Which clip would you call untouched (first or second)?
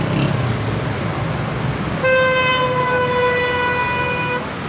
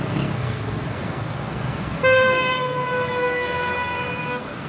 first